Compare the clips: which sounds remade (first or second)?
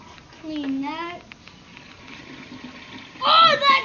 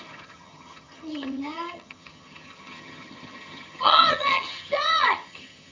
second